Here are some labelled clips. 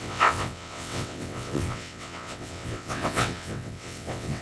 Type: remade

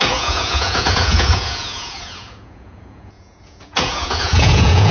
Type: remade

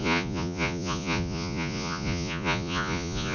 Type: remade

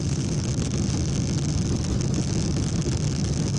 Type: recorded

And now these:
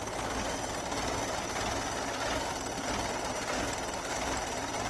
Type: recorded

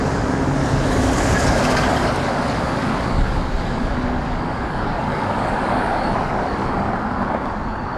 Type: remade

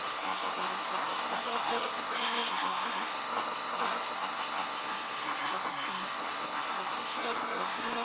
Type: remade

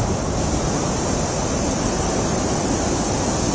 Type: recorded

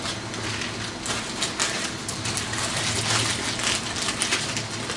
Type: recorded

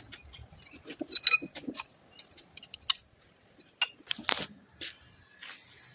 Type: recorded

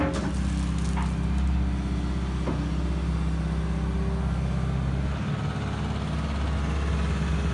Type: recorded